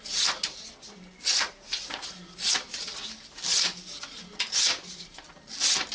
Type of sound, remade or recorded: recorded